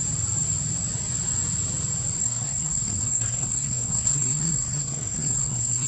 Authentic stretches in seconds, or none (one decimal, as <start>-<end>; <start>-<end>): 0.0-2.2